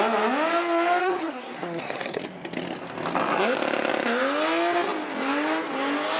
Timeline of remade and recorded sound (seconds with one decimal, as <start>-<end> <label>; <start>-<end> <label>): 0.0-1.0 recorded; 1.0-2.2 remade; 2.2-6.2 recorded